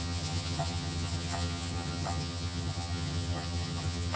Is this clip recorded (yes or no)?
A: no